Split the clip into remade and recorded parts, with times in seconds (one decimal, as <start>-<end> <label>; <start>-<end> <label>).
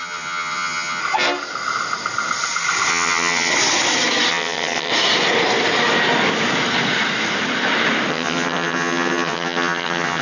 0.0-1.0 remade; 1.0-2.9 recorded; 2.9-3.5 remade; 3.5-4.3 recorded; 4.3-4.9 remade; 4.9-8.1 recorded; 8.1-10.2 remade